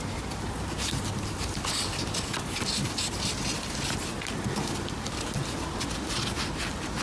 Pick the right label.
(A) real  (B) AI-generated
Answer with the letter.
A